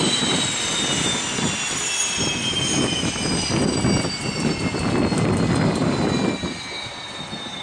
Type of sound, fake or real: real